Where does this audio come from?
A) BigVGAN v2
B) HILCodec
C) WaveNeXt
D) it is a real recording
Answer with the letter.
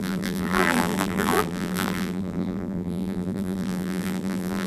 A